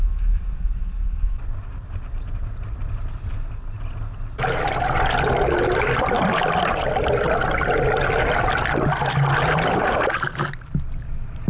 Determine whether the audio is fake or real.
real